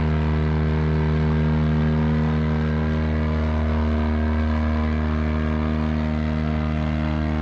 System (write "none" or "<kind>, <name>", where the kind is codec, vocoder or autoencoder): none